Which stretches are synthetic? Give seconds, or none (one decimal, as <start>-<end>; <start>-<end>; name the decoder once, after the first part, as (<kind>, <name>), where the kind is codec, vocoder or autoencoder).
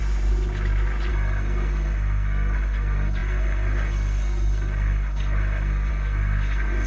1.1-6.9 (codec, SNAC)